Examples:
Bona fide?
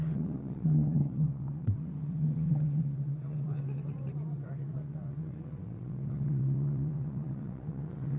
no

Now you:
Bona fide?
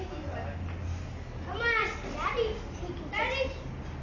yes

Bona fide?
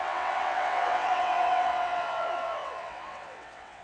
no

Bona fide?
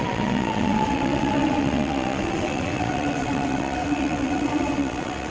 no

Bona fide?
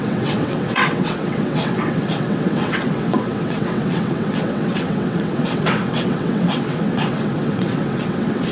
no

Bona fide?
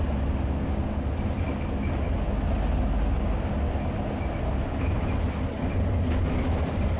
yes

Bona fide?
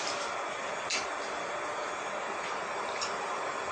yes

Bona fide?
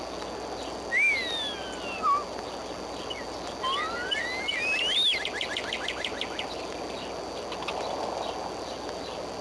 yes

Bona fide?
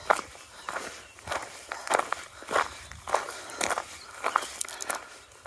yes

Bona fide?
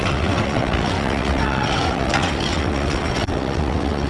no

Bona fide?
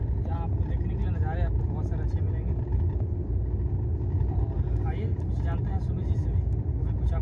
yes